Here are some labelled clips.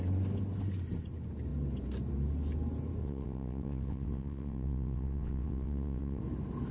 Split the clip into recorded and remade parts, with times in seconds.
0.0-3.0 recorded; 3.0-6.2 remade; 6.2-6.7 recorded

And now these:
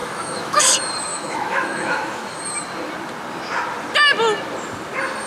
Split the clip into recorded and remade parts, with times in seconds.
0.0-0.6 remade; 0.6-1.1 recorded; 1.1-2.4 remade; 2.4-5.3 recorded

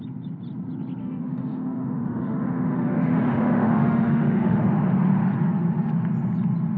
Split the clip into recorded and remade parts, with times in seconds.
0.0-1.0 recorded; 1.0-4.6 remade; 4.6-6.8 recorded

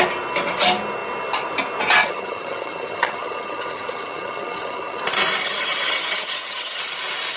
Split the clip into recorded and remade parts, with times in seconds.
0.0-2.0 recorded; 2.0-5.0 remade; 5.0-5.4 recorded; 5.4-6.8 remade; 6.8-7.4 recorded

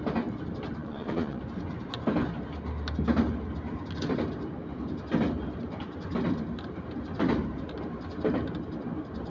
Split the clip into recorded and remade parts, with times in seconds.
0.0-0.8 recorded; 0.8-1.4 remade; 1.4-9.3 recorded

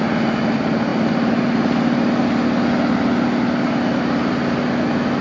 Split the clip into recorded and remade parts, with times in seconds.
0.0-5.2 recorded

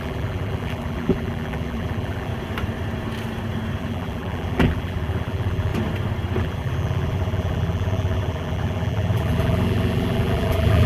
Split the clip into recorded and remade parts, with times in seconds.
0.0-2.3 remade; 2.3-3.8 recorded; 3.8-5.7 remade; 5.7-6.4 recorded; 6.4-10.9 remade

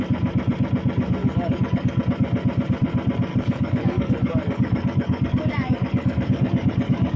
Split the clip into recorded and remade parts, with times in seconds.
0.0-1.2 recorded; 1.2-2.0 remade; 2.0-3.3 recorded; 3.3-7.2 remade